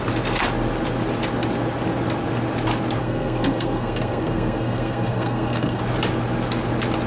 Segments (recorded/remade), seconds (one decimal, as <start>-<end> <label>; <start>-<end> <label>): 0.0-3.0 recorded; 3.0-5.8 remade; 5.8-7.1 recorded

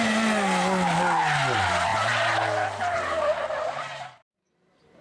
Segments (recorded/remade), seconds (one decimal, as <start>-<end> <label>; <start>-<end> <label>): 0.0-5.0 recorded

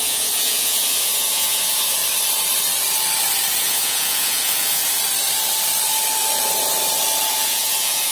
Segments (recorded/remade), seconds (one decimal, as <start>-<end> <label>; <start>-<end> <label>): 0.0-2.0 remade; 2.0-3.6 recorded; 3.6-4.8 remade; 4.8-7.3 recorded; 7.3-8.1 remade

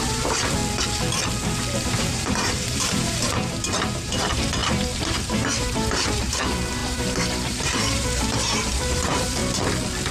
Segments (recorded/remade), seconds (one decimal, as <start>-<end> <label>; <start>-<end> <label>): 0.0-0.6 remade; 0.6-1.8 recorded; 1.8-9.4 remade; 9.4-10.1 recorded

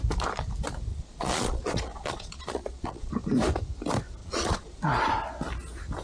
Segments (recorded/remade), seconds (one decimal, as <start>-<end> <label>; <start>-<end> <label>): 0.0-0.9 recorded; 0.9-3.1 remade; 3.1-4.2 recorded; 4.2-4.8 remade; 4.8-6.0 recorded

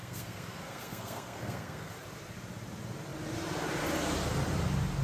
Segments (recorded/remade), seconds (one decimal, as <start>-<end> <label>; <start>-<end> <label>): 0.0-1.9 remade; 1.9-5.0 recorded